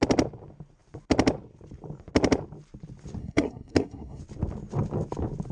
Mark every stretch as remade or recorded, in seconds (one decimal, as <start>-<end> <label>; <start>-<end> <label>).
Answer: 0.0-3.2 recorded; 3.2-4.2 remade; 4.2-5.5 recorded